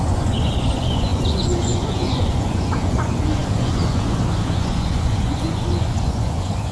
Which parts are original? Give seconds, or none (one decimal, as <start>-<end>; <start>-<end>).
none